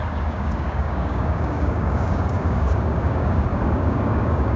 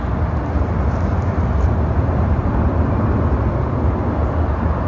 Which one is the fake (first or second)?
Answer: first